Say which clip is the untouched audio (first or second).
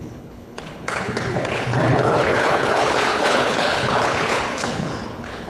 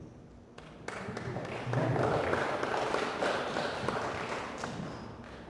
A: second